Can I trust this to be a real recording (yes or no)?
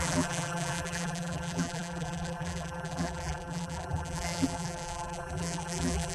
no